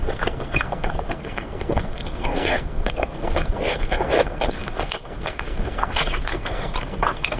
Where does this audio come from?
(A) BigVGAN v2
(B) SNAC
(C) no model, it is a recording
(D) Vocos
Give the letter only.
B